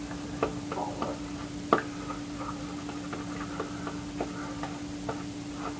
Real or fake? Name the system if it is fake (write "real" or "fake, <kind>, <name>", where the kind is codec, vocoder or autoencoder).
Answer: real